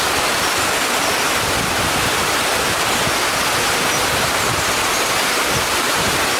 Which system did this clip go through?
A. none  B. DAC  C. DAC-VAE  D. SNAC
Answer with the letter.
A